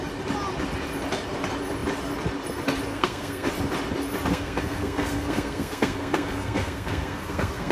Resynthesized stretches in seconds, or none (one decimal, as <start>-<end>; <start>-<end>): 2.9-3.5; 4.3-7.7